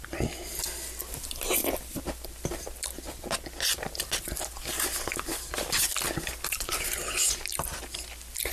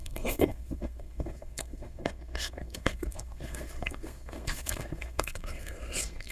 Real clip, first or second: first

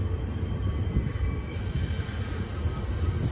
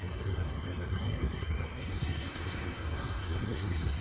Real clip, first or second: first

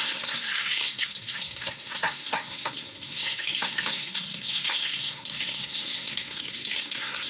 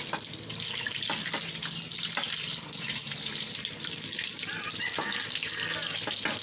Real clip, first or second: second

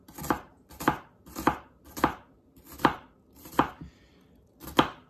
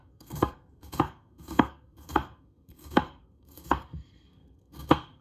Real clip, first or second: first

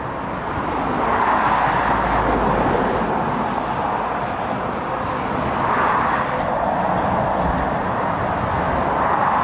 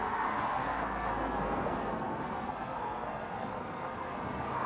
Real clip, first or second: first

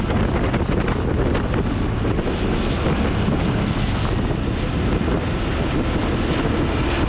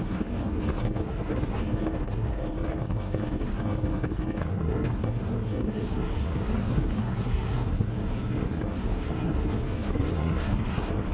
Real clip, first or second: first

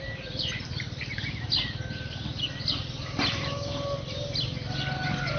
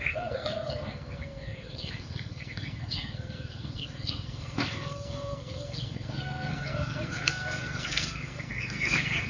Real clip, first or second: first